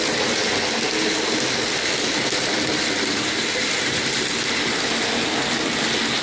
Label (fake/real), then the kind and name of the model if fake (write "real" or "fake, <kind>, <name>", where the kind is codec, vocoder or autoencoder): real